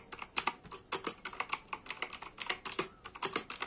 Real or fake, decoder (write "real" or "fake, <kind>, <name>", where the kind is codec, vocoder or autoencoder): real